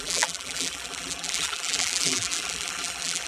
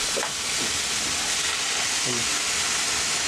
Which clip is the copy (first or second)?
first